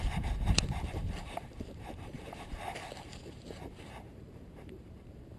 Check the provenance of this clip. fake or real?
fake